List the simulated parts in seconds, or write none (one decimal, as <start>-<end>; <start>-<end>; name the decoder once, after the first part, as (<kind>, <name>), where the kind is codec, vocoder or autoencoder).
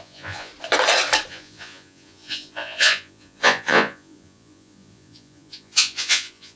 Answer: 0.0-0.5 (vocoder, Vocos); 1.3-6.6